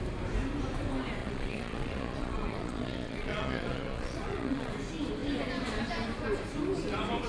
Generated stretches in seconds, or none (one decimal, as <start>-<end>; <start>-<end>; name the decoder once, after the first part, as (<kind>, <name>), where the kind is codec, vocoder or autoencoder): 1.2-4.7 (vocoder, Vocos)